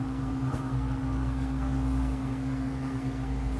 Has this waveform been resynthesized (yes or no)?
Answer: yes